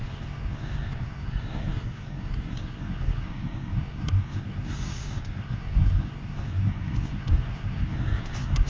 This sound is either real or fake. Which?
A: fake